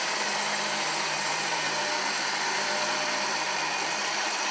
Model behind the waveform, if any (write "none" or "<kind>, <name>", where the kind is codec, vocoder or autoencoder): vocoder, BigVGAN v2